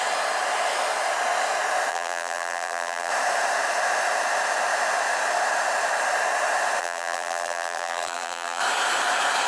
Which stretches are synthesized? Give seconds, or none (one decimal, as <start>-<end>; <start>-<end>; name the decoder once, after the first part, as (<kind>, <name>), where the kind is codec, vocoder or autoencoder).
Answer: 1.9-3.1 (vocoder, BigVGAN v2); 6.8-8.6